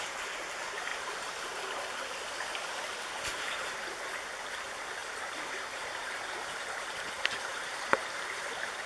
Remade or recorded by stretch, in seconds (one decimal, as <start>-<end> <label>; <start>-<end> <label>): 0.0-7.5 recorded; 7.5-8.9 remade